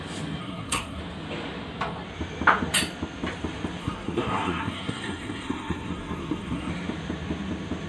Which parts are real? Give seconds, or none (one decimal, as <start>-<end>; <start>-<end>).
0.0-0.4; 1.0-3.8; 6.7-7.9